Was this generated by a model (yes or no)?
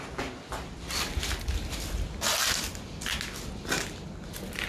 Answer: no